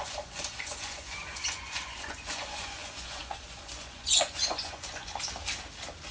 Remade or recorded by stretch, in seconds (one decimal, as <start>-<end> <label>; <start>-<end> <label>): 0.0-5.1 remade; 5.1-6.1 recorded